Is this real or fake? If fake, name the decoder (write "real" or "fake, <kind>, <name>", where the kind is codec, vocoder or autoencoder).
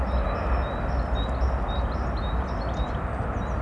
real